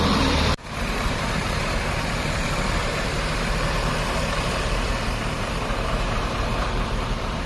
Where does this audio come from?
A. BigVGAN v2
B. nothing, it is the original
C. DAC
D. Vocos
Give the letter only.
A